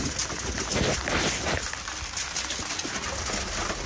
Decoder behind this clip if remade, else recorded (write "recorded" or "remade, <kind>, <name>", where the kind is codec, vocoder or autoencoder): recorded